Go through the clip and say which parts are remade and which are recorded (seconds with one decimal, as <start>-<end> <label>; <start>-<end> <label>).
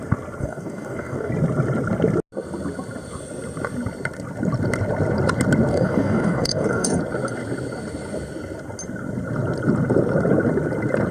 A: 0.0-0.4 recorded; 0.4-1.3 remade; 1.3-5.7 recorded; 5.7-7.0 remade; 7.0-11.1 recorded